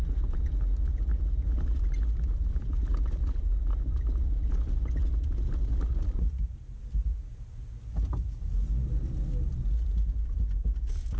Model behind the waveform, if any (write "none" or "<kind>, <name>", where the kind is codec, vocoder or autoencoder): none